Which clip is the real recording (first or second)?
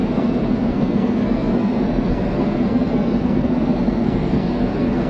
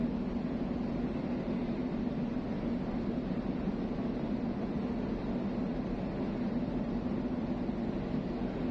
second